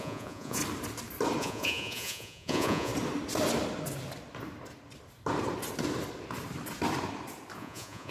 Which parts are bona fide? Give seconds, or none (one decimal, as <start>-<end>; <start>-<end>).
0.6-1.4; 2.9-7.6